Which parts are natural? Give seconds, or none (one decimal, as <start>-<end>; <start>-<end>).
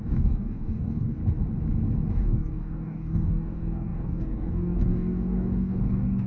1.2-2.1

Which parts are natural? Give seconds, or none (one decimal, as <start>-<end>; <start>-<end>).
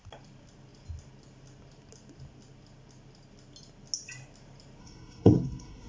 0.0-4.8